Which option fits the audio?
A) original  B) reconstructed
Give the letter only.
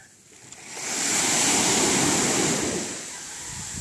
A